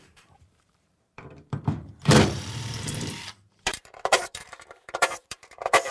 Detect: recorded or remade remade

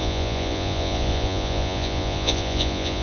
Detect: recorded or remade remade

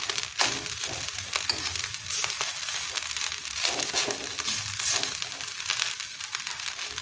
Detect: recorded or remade recorded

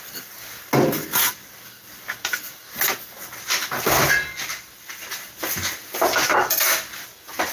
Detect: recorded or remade recorded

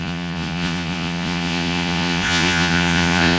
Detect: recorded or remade remade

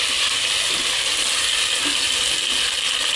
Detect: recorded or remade recorded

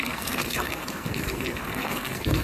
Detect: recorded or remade remade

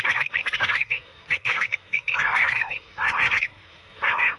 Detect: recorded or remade remade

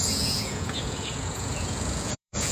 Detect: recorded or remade remade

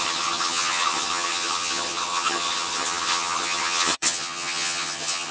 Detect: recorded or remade remade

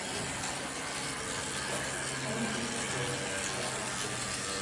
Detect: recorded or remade recorded